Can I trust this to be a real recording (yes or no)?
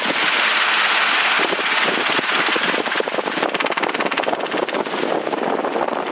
yes